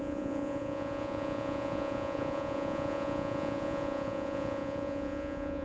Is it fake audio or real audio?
fake